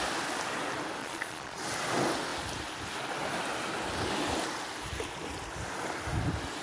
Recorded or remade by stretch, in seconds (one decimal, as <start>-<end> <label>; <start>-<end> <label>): 0.0-1.0 recorded; 1.0-1.6 remade; 1.6-6.6 recorded